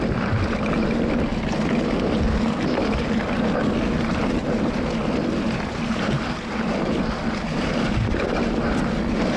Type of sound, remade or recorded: recorded